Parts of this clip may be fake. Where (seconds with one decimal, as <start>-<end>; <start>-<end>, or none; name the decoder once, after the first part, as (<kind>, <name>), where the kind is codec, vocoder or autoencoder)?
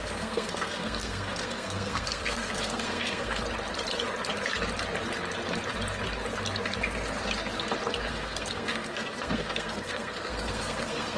0.0-3.4 (codec, SNAC); 8.1-11.2